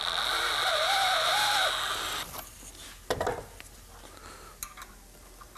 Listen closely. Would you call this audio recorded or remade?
recorded